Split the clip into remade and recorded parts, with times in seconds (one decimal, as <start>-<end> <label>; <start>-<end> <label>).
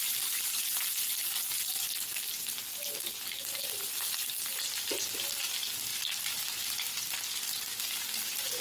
0.0-8.6 recorded